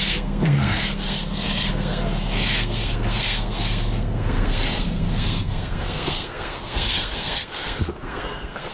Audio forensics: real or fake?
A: fake